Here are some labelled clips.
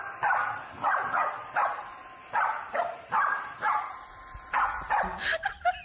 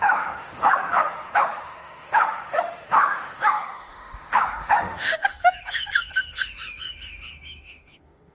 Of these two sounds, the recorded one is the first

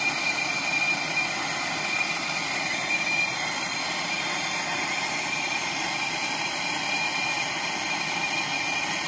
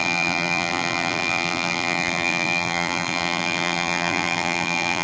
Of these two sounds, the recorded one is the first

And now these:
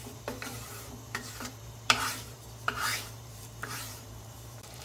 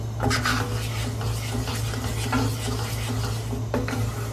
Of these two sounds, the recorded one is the second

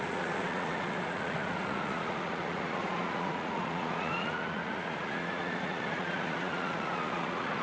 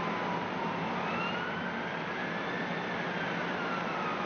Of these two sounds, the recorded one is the second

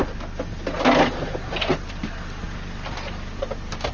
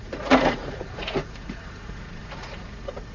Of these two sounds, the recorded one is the first